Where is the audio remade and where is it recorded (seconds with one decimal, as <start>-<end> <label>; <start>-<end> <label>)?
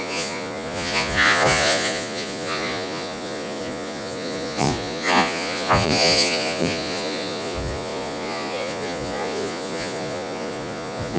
0.0-11.2 remade